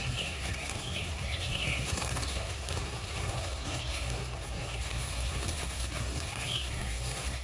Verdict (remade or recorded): remade